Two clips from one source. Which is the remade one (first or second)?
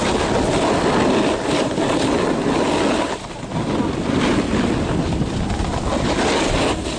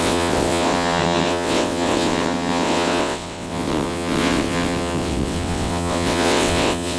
second